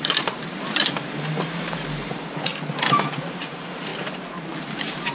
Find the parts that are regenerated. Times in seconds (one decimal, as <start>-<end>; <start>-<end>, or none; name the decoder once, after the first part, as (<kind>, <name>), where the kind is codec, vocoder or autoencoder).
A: 0.0-2.5 (vocoder, BigVGAN v2); 3.3-3.9; 4.6-5.1